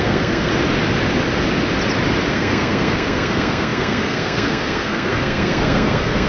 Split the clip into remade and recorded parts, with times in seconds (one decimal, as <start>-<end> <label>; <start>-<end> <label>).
0.0-0.5 remade; 0.5-2.3 recorded; 2.3-6.3 remade